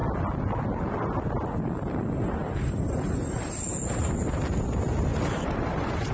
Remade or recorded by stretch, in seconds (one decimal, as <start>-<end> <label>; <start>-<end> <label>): 0.0-2.4 recorded; 2.4-4.1 remade; 4.1-5.1 recorded; 5.1-6.1 remade